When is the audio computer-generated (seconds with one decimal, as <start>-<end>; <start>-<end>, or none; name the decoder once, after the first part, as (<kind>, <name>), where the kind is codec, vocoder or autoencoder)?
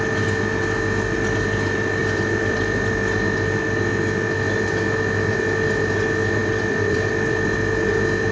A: 2.0-2.9 (vocoder, BigVGAN v2); 6.4-7.6